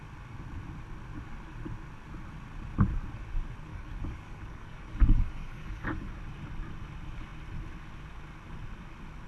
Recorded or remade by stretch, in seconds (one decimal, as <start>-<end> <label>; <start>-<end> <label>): 0.0-3.7 recorded; 3.7-6.1 remade; 6.1-9.3 recorded